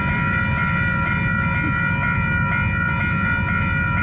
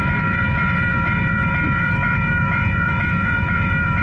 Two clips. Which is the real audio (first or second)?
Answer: first